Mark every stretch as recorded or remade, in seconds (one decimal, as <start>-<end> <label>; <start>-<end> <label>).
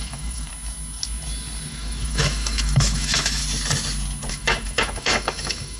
0.0-0.5 remade; 0.5-1.7 recorded; 1.7-3.4 remade; 3.4-4.3 recorded; 4.3-5.8 remade